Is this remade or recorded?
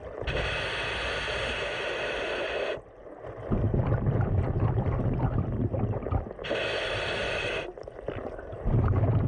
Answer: recorded